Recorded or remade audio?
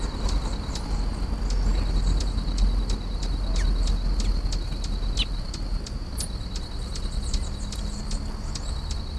recorded